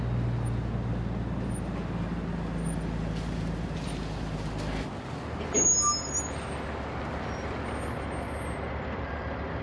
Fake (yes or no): no